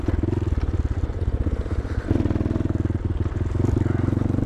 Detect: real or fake real